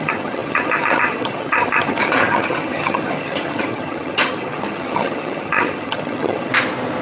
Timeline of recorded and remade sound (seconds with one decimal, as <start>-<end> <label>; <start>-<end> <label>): 0.0-6.5 remade; 6.5-7.0 recorded